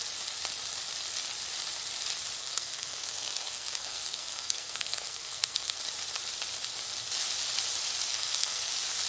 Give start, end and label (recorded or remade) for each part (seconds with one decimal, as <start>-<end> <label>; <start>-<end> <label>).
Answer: 0.0-2.4 recorded; 2.4-5.8 remade; 5.8-8.1 recorded; 8.1-8.7 remade; 8.7-9.1 recorded